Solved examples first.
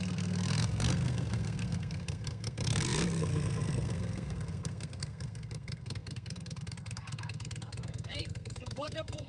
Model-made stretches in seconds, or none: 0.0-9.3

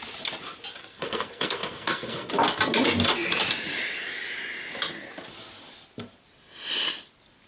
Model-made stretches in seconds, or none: 0.8-2.3

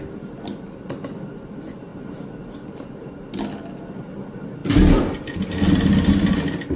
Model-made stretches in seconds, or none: none

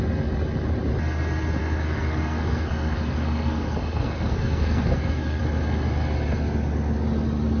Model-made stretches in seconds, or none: 1.6-5.4